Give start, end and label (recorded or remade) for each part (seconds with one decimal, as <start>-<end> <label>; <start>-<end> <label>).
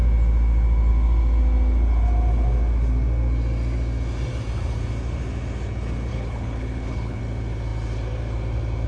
0.0-6.1 recorded; 6.1-7.2 remade; 7.2-8.9 recorded